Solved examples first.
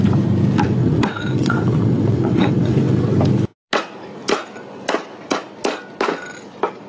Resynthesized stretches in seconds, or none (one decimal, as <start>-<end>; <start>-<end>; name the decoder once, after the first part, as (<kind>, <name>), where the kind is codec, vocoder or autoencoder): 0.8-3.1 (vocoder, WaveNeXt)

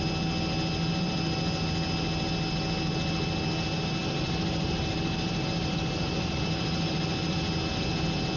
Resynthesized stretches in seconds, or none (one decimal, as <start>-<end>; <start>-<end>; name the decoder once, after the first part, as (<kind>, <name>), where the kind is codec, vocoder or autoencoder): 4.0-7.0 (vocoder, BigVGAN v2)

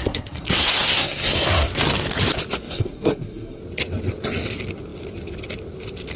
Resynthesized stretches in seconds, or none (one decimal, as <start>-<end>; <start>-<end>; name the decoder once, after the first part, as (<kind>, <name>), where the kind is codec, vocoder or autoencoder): 0.0-1.7 (codec, SNAC); 2.6-3.6

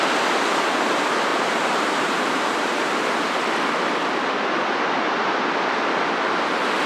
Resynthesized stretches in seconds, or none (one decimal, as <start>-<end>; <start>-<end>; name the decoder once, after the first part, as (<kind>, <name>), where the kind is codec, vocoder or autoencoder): 1.3-3.4 (vocoder, BigVGAN v2)

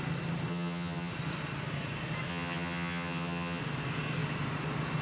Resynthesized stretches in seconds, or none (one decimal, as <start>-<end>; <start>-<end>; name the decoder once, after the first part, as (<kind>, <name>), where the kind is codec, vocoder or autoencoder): 0.5-1.1 (vocoder, HiFi-GAN); 2.3-3.6

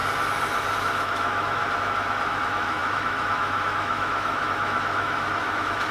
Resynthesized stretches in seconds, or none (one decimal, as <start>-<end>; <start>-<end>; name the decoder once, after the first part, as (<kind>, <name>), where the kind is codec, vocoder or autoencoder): 0.8-1.6 (autoencoder, DAC-VAE); 2.3-5.9

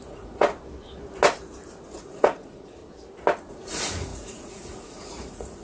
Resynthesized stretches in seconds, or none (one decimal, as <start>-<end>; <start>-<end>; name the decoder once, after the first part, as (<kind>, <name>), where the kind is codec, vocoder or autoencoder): 0.0-0.5 (vocoder, Vocos); 2.0-2.8; 3.5-5.6